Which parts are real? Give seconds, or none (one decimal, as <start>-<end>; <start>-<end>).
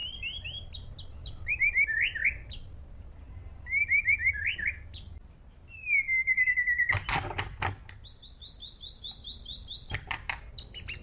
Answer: 0.0-11.0